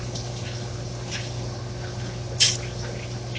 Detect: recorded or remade recorded